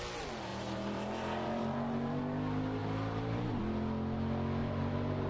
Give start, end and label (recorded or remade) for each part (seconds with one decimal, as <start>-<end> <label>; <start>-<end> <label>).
0.0-0.5 recorded; 0.5-2.2 remade; 2.2-2.8 recorded; 2.8-3.6 remade; 3.6-4.6 recorded; 4.6-5.3 remade